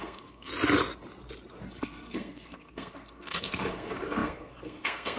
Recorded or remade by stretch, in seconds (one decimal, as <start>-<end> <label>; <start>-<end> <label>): 0.0-0.5 remade; 0.5-1.8 recorded; 1.8-5.2 remade